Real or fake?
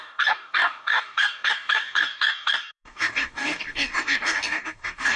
fake